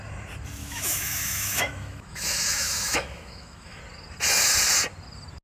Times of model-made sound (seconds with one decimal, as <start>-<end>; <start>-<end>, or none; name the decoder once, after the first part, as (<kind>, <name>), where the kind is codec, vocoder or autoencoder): 0.6-3.8 (autoencoder, DAC-VAE)